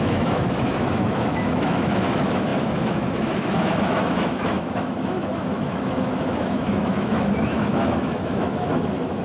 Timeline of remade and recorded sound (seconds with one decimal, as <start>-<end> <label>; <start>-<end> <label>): 0.0-9.2 remade